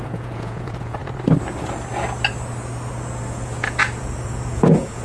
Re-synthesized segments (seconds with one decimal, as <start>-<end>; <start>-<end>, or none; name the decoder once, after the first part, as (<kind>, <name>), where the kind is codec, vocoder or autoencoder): 0.0-1.0 (vocoder, Vocos); 2.9-5.0